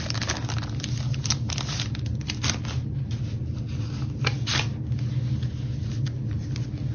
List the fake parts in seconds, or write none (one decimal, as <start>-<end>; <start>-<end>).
none